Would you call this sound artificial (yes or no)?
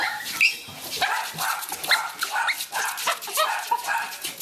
no